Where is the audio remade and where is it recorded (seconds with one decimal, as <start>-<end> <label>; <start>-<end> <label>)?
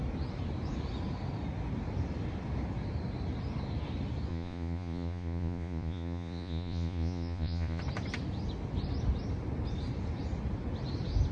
0.0-4.3 recorded; 4.3-7.8 remade; 7.8-11.3 recorded